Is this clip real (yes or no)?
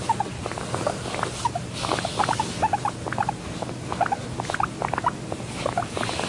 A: yes